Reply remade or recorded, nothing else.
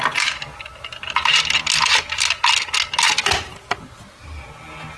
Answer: recorded